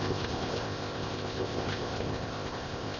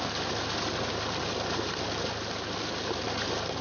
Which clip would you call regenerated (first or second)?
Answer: first